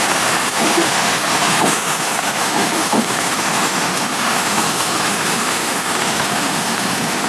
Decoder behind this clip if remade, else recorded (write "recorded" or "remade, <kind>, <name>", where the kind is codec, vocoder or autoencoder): remade, autoencoder, DAC-VAE